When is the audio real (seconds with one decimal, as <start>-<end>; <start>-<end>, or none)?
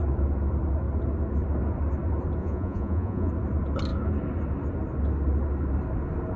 0.0-2.4; 3.3-6.4